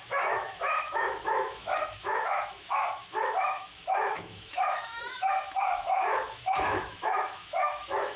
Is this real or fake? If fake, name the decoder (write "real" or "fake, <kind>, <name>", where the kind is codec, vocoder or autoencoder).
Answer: fake, autoencoder, DAC-VAE